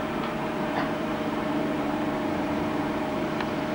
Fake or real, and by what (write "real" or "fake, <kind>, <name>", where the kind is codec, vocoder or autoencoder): fake, vocoder, BigVGAN v2